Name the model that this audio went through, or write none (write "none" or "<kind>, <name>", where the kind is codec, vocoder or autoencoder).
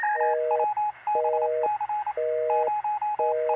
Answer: none